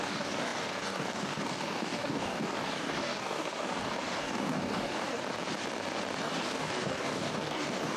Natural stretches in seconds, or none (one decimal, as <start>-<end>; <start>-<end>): 5.2-6.2